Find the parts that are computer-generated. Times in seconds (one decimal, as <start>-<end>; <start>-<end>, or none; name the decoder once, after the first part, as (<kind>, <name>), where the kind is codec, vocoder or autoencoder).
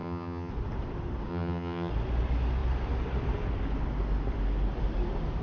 0.0-0.5 (vocoder, HiFi-GAN); 1.3-1.9